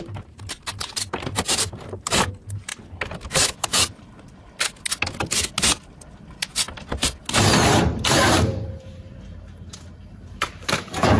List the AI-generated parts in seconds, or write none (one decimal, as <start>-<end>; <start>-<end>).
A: 0.0-2.7; 7.7-11.2